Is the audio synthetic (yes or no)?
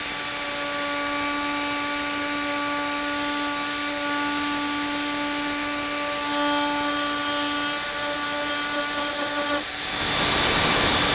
no